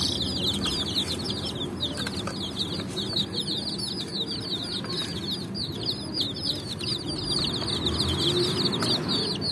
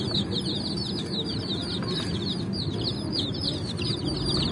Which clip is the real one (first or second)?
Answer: first